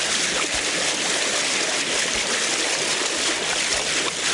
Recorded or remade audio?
recorded